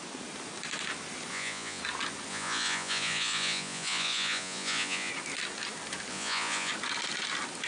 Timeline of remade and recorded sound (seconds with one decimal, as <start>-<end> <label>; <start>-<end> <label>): 0.0-1.3 recorded; 1.3-1.8 remade; 1.8-2.3 recorded; 2.3-5.1 remade; 5.1-6.1 recorded; 6.1-6.7 remade; 6.7-7.7 recorded